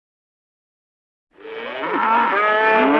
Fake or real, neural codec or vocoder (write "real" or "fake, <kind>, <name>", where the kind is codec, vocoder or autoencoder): real